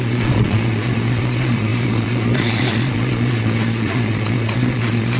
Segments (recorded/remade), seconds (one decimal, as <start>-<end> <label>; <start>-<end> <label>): 0.0-5.2 remade